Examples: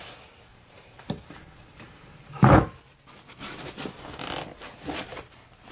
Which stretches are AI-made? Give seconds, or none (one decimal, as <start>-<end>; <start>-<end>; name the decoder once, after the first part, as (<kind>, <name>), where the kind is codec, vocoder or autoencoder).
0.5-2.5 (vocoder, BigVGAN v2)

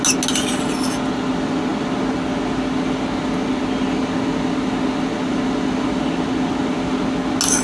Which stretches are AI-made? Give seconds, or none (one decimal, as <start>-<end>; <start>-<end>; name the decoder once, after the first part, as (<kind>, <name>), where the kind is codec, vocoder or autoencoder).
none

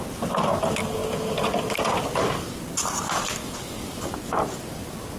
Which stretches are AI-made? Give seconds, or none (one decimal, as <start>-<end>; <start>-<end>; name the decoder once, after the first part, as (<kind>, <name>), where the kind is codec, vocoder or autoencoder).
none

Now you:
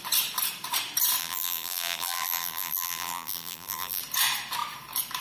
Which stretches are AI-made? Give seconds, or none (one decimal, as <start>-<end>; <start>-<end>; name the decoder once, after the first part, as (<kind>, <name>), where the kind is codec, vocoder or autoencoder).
1.2-4.0 (vocoder, BigVGAN v2)

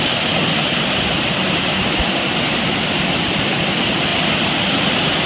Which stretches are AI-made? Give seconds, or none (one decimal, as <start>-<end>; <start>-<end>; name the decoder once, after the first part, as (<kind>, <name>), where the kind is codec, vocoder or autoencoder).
4.1-5.3 (vocoder, BigVGAN v2)

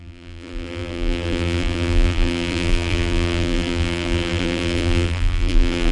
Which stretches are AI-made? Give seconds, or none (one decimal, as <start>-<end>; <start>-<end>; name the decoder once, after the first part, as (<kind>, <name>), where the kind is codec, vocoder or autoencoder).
0.0-5.9 (vocoder, BigVGAN v2)